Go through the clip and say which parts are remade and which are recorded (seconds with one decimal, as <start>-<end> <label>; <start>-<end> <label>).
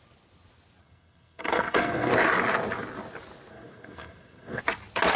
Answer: 0.0-0.8 recorded; 0.8-2.1 remade; 2.1-3.5 recorded; 3.5-4.6 remade; 4.6-5.2 recorded